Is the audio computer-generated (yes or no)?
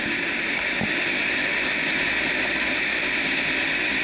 no